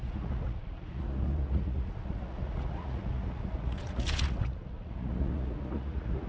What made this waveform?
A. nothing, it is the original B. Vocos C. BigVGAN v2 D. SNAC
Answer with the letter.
B